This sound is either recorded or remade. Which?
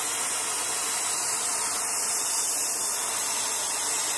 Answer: recorded